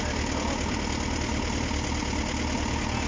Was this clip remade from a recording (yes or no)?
no